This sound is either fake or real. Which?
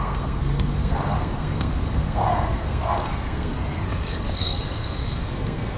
fake